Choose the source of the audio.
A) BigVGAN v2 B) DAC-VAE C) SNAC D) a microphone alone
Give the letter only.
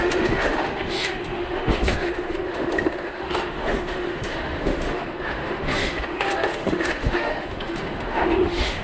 B